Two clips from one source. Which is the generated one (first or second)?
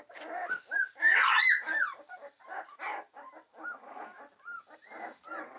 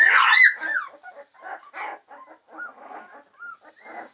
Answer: first